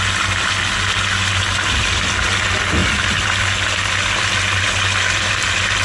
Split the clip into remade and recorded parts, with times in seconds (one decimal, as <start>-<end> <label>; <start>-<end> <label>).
0.0-5.8 recorded

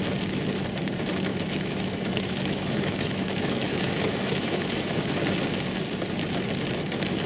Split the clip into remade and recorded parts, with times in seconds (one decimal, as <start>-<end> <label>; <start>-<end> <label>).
0.0-1.3 recorded; 1.3-5.2 remade; 5.2-7.3 recorded

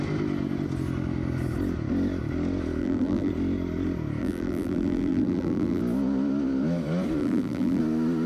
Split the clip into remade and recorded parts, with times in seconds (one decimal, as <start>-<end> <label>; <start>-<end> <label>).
0.0-2.8 recorded; 2.8-3.3 remade; 3.3-4.2 recorded; 4.2-5.8 remade; 5.8-7.2 recorded; 7.2-7.8 remade; 7.8-8.3 recorded

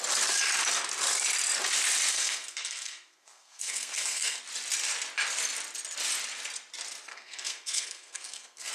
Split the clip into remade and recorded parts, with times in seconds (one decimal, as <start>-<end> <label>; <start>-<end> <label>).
0.0-2.1 recorded; 2.1-4.4 remade; 4.4-7.1 recorded; 7.1-8.7 remade

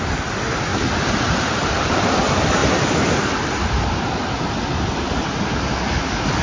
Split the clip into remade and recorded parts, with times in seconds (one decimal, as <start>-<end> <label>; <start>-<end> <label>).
0.0-0.7 recorded; 0.7-2.1 remade; 2.1-6.4 recorded

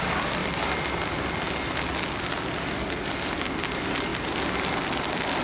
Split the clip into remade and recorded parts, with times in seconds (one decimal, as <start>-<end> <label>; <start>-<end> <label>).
0.0-5.4 recorded

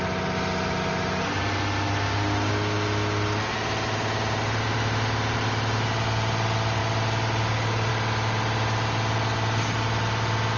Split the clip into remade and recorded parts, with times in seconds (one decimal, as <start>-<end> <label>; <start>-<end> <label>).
0.0-10.6 recorded